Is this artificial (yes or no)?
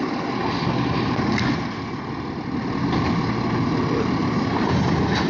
no